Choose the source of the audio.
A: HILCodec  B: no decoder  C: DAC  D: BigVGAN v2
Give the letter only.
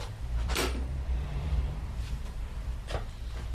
D